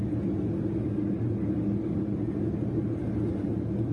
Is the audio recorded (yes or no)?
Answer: yes